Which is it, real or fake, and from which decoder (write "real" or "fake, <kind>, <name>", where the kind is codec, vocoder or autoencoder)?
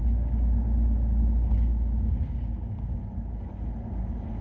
real